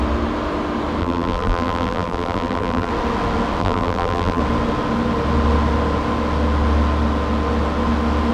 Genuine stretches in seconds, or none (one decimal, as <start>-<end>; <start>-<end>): 0.0-1.0; 2.9-3.6; 4.4-8.3